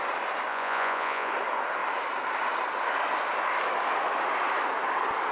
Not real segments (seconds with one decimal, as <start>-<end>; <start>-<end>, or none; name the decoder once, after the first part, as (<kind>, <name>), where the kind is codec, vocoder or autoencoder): 0.5-1.3 (vocoder, Vocos)

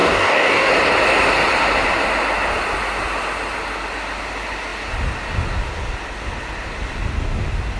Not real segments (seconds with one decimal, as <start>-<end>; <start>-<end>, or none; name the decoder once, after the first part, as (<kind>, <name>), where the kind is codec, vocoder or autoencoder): 0.0-0.7 (codec, DAC)

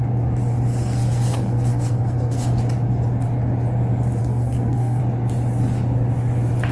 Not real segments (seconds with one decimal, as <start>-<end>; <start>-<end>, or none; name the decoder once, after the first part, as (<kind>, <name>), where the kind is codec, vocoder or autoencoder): 0.7-2.6 (codec, SNAC); 4.2-5.0

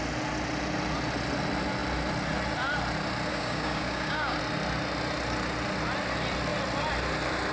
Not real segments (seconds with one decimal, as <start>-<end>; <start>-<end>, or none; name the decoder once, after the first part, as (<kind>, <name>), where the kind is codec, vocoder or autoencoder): 3.3-4.4 (codec, DAC)

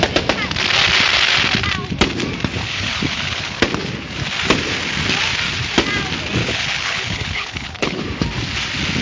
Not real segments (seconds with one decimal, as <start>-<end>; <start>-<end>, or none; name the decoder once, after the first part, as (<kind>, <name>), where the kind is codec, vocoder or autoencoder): 2.6-3.6 (codec, HILCodec); 6.4-8.0

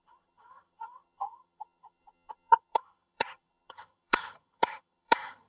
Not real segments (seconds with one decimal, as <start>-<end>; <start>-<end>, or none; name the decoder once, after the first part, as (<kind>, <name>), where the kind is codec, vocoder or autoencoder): 0.0-5.5 (vocoder, HiFi-GAN)

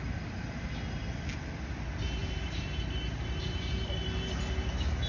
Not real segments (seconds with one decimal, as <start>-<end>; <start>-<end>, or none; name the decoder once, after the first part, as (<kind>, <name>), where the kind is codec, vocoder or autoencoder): 2.2-2.8 (vocoder, BigVGAN v2)